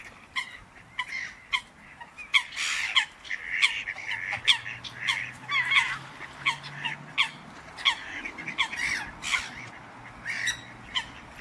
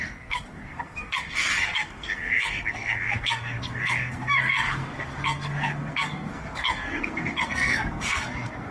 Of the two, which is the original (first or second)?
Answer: first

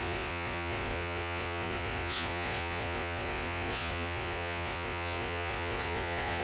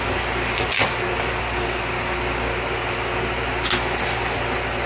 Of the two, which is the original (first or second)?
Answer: second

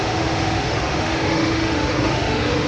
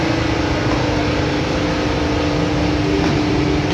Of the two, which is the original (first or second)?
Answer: second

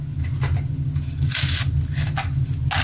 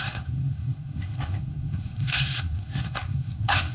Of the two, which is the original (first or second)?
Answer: first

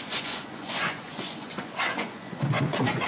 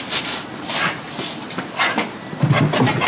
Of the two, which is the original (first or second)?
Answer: second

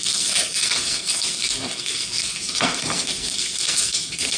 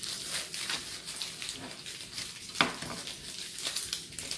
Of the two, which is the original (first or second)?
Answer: second